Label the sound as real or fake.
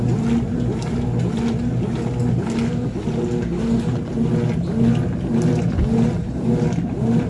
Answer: real